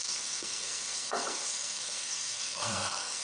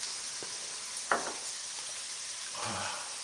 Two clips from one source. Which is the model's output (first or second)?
first